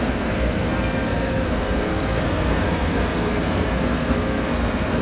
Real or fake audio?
fake